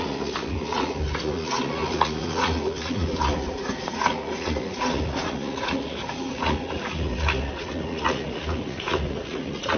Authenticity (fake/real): fake